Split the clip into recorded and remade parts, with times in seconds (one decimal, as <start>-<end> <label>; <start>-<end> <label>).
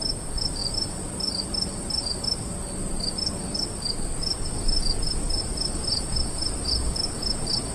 0.0-7.7 recorded